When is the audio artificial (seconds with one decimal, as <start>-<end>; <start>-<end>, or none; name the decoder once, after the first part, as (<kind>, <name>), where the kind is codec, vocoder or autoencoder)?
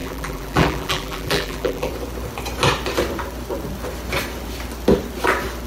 0.0-1.9 (vocoder, BigVGAN v2)